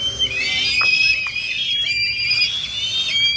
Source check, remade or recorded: recorded